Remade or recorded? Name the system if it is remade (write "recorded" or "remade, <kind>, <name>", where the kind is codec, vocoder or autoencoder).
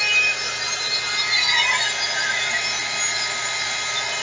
recorded